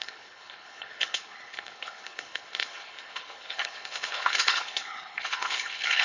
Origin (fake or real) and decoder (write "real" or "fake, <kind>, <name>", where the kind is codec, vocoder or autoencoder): fake, codec, HILCodec